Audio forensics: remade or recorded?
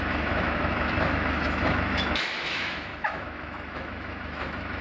remade